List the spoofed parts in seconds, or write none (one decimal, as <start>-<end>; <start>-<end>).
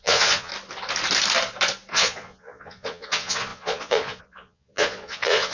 0.0-0.5; 1.9-5.5